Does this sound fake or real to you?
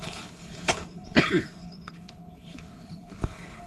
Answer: fake